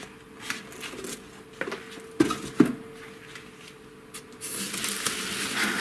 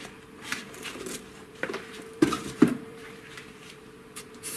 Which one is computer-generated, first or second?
second